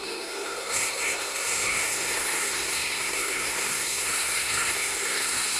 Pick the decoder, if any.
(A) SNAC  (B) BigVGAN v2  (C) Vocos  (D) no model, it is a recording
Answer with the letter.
A